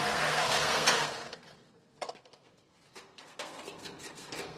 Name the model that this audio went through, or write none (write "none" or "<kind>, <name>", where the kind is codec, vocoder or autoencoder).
codec, SNAC